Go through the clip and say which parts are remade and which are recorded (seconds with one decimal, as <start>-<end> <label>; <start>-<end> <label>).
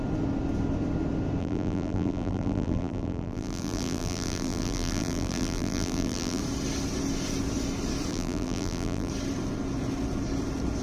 0.0-1.4 recorded; 1.4-6.4 remade; 6.4-8.1 recorded; 8.1-9.1 remade; 9.1-10.8 recorded